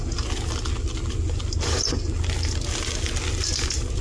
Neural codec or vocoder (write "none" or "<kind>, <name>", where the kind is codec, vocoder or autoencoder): none